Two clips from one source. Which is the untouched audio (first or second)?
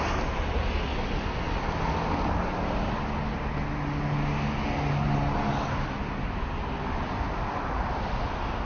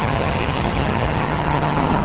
first